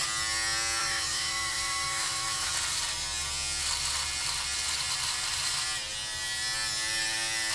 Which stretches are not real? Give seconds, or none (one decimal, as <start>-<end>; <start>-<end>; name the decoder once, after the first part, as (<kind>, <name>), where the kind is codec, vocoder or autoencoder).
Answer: 0.8-2.5 (autoencoder, DAC-VAE)